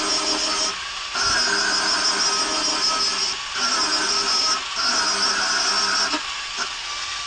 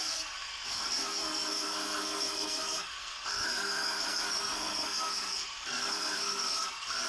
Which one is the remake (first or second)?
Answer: second